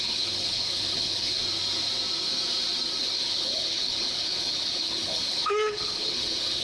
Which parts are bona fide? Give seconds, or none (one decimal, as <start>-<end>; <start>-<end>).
1.4-3.0